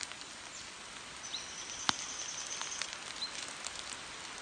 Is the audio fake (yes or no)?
no